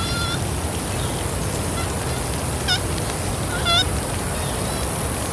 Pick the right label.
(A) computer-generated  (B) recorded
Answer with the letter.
B